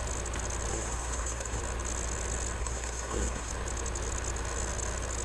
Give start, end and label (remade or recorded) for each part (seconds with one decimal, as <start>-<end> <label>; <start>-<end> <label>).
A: 0.0-0.7 recorded; 0.7-1.6 remade; 1.6-2.6 recorded; 2.6-3.5 remade; 3.5-5.2 recorded